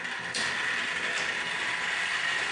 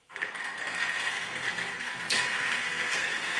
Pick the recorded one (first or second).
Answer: first